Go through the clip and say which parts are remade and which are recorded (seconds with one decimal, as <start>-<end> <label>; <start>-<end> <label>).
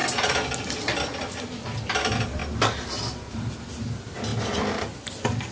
0.0-5.5 recorded